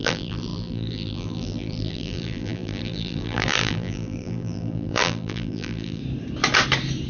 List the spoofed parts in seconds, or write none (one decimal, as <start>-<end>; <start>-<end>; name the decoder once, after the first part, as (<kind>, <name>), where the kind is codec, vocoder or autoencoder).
0.0-6.0 (vocoder, BigVGAN v2)